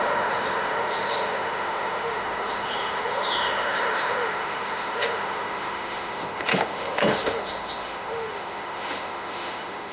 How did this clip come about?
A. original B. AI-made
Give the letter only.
B